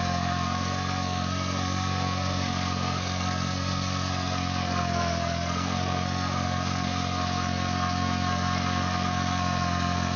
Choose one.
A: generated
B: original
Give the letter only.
A